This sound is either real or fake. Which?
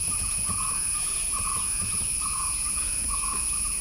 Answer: fake